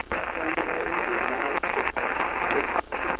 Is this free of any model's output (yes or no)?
no